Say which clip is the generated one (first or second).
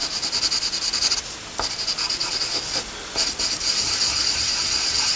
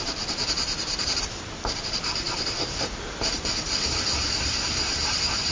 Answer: second